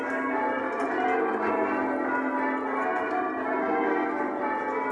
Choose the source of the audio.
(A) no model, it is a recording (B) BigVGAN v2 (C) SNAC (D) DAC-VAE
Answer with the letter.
A